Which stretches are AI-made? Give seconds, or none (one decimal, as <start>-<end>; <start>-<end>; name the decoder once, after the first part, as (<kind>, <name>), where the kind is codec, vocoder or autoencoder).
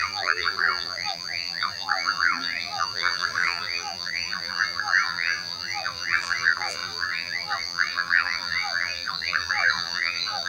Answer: 0.0-10.5 (vocoder, BigVGAN v2)